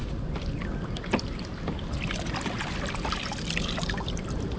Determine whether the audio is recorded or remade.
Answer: recorded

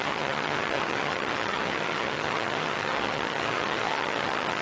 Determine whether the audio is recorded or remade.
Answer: remade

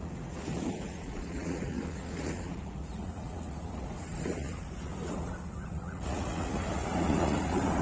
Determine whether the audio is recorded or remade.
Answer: remade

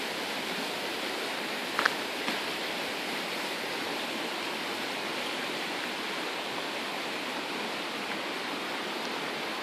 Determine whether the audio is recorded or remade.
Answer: recorded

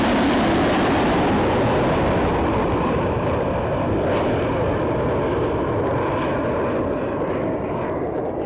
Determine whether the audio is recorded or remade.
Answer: recorded